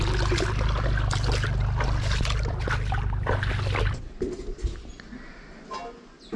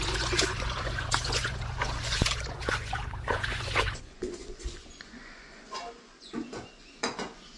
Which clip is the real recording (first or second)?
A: first